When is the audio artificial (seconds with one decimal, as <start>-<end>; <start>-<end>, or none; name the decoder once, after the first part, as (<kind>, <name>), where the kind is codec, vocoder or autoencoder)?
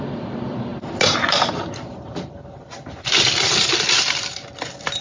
0.0-0.7 (vocoder, BigVGAN v2); 3.7-5.0